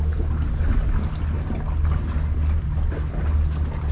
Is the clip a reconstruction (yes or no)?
no